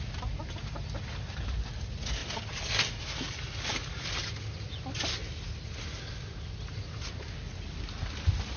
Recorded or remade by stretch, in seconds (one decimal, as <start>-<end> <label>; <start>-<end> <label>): 0.0-8.6 recorded